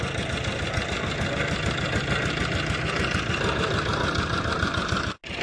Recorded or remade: recorded